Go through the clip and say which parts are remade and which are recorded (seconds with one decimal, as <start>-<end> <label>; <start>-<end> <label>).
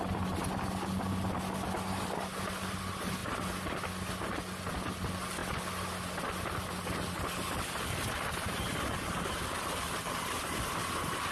0.0-11.3 recorded